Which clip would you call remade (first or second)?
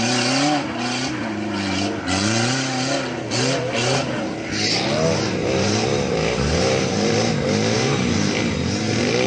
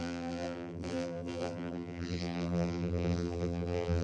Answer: second